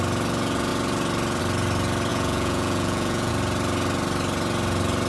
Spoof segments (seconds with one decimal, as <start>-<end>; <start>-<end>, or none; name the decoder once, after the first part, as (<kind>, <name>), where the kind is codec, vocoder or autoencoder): 2.1-3.3 (vocoder, Vocos)